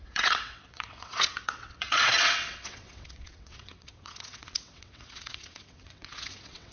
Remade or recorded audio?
remade